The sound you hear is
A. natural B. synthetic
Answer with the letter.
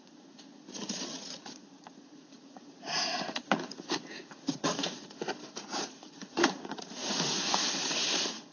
B